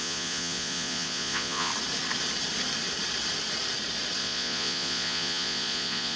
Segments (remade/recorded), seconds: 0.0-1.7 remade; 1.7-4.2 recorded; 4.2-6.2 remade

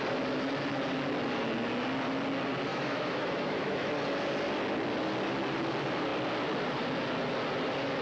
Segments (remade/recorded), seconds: 0.0-2.7 recorded; 2.7-3.9 remade; 3.9-8.0 recorded

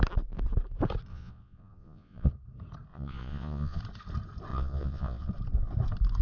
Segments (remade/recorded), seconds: 0.0-1.1 recorded; 1.1-2.3 remade; 2.3-2.9 recorded; 2.9-3.8 remade; 3.8-4.5 recorded; 4.5-5.3 remade; 5.3-6.2 recorded

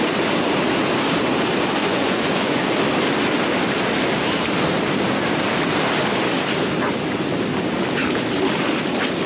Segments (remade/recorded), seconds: 0.0-1.8 recorded; 1.8-2.6 remade; 2.6-9.3 recorded